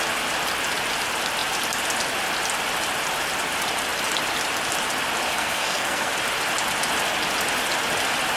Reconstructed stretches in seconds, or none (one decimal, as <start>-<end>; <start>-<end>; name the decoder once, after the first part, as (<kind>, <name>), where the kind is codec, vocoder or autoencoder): 5.3-6.1 (codec, SNAC)